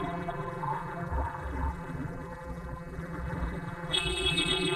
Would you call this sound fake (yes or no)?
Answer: yes